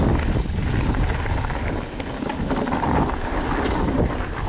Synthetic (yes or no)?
no